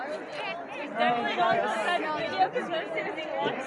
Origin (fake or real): real